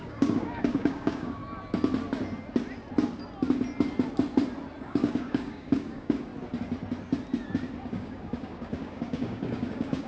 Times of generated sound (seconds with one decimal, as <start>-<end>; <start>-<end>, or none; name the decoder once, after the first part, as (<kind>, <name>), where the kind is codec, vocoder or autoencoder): 0.0-1.4 (codec, DAC); 4.8-6.3; 7.9-10.1